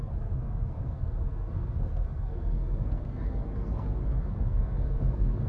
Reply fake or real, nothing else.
fake